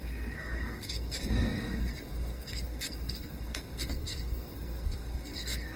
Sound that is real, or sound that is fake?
fake